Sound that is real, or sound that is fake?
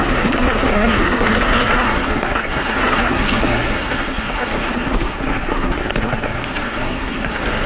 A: fake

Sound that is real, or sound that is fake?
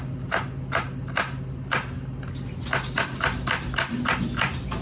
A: real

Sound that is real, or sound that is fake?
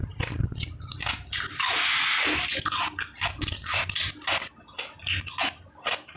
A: real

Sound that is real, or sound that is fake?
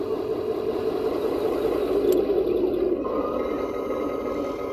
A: real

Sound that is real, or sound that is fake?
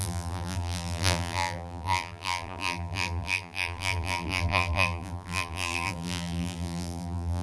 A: fake